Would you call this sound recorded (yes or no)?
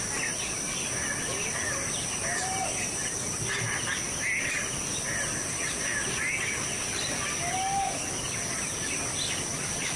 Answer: yes